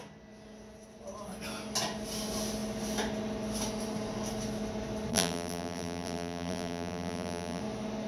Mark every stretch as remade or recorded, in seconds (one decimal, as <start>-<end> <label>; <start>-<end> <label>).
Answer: 0.0-5.1 recorded; 5.1-7.6 remade; 7.6-8.1 recorded